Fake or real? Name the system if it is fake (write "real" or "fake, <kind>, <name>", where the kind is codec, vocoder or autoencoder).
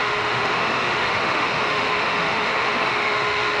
fake, autoencoder, DAC-VAE